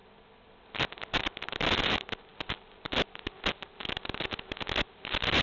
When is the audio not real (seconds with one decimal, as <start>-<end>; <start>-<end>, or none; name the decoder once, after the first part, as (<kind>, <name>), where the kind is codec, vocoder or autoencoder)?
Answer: none

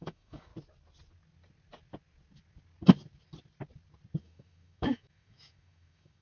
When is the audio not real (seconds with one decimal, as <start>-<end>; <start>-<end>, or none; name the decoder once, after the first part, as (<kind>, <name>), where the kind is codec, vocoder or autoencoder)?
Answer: 0.0-0.5 (autoencoder, DAC-VAE); 4.2-6.2

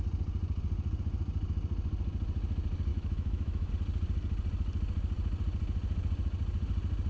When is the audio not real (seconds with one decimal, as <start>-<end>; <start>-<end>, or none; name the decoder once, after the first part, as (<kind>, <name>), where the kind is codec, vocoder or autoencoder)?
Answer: 2.9-3.7 (autoencoder, DAC-VAE)